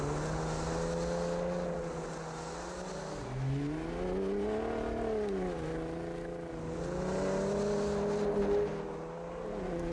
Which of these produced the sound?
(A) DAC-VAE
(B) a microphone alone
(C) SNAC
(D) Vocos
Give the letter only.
B